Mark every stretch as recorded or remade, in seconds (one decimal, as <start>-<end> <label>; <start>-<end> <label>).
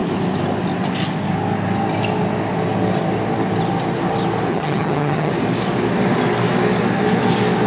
0.0-4.5 recorded; 4.5-5.3 remade; 5.3-7.7 recorded